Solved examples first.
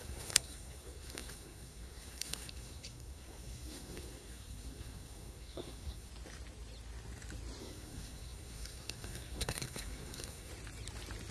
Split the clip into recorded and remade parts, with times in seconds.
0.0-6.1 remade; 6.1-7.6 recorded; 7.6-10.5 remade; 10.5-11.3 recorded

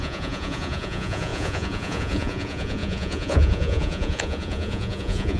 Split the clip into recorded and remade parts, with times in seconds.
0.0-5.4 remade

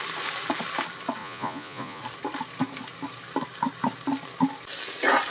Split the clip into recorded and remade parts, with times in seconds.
0.0-1.2 recorded; 1.2-2.0 remade; 2.0-5.3 recorded